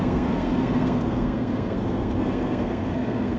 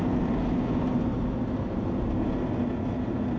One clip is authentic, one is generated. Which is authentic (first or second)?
second